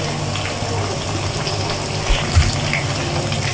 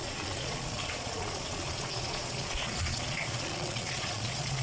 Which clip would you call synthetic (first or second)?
second